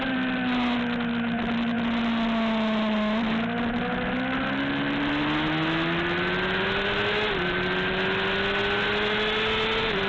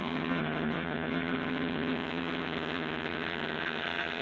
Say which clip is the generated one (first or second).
second